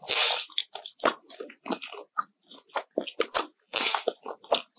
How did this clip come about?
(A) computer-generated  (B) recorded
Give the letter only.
A